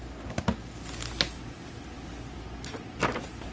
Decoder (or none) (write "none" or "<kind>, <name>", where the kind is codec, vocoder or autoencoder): none